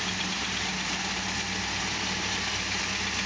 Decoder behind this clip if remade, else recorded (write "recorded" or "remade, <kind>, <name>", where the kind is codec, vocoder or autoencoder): recorded